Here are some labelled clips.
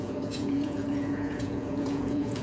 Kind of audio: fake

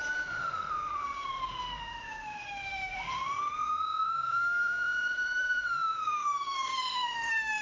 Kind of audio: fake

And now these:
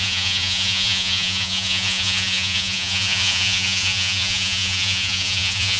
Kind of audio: fake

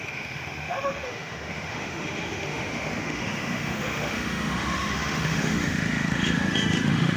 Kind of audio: fake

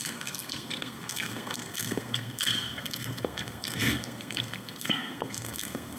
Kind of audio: fake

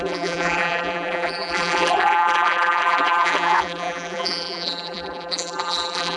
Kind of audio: fake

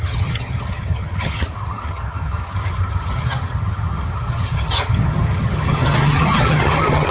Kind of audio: fake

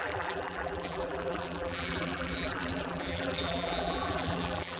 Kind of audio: fake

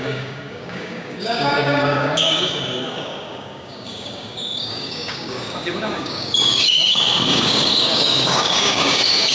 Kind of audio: fake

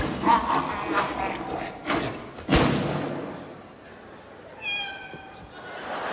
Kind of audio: real